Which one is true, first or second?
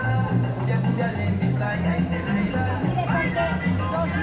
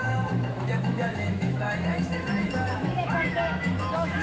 first